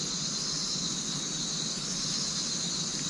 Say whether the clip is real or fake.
real